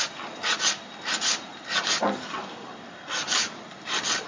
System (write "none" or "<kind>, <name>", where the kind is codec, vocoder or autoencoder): none